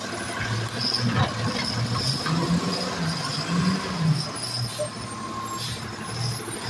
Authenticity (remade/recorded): recorded